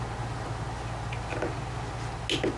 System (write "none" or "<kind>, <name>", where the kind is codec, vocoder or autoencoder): none